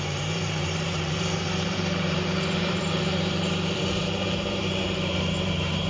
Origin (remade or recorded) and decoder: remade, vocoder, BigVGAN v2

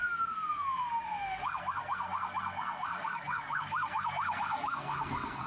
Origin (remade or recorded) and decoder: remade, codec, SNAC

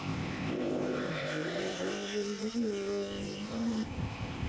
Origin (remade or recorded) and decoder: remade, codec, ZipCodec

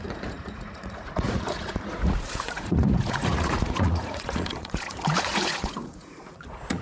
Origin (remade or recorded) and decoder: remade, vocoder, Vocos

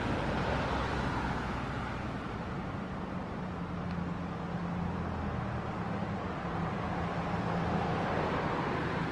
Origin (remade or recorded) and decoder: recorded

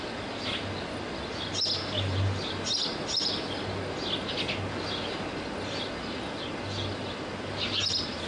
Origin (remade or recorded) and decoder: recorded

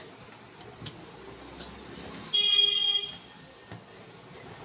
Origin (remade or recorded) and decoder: recorded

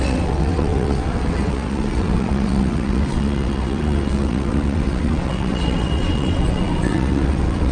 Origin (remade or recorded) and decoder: remade, vocoder, WaveNeXt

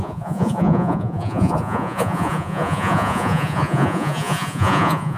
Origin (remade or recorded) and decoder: remade, vocoder, Vocos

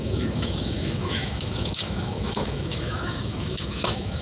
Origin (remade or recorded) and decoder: remade, autoencoder, DAC-VAE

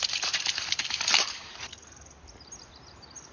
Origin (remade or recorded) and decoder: recorded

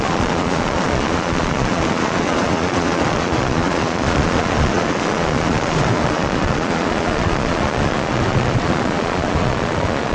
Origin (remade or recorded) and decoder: remade, vocoder, Vocos